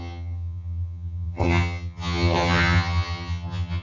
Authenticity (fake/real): fake